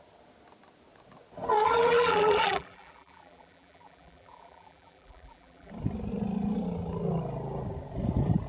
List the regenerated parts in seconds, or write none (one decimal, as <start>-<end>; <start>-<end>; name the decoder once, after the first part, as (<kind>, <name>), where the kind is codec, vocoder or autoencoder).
1.6-5.7 (vocoder, BigVGAN v2)